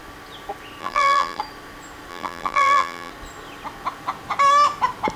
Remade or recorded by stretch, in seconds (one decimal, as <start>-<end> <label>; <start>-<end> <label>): 0.0-0.8 recorded; 0.8-1.4 remade; 1.4-2.1 recorded; 2.1-3.1 remade; 3.1-5.2 recorded

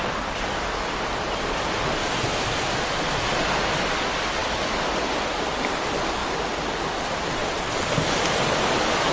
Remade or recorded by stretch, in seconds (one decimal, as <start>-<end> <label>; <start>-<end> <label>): 0.0-9.1 recorded

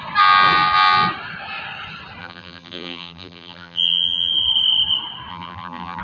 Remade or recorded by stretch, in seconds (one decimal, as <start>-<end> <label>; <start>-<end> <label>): 0.0-2.2 recorded; 2.2-4.3 remade; 4.3-5.3 recorded; 5.3-6.0 remade

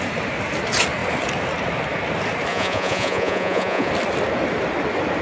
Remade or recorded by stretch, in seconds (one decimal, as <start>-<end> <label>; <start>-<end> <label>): 0.0-2.5 recorded; 2.5-3.9 remade; 3.9-5.2 recorded

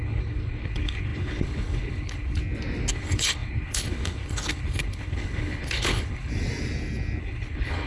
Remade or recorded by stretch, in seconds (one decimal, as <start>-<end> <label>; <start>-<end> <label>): 0.0-2.4 remade; 2.4-2.9 recorded; 2.9-6.3 remade; 6.3-7.2 recorded; 7.2-7.9 remade

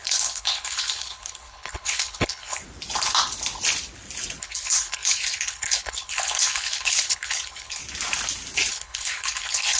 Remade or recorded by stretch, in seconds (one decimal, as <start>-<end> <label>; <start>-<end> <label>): 0.0-2.6 remade; 2.6-4.4 recorded; 4.4-7.8 remade; 7.8-8.7 recorded; 8.7-9.8 remade

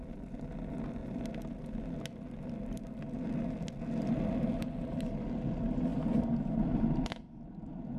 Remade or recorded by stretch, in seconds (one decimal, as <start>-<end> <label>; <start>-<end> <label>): 0.0-5.9 recorded; 5.9-7.3 remade; 7.3-8.0 recorded